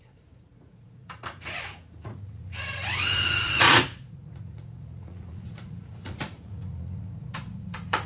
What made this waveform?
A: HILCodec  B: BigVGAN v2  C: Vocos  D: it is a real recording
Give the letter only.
C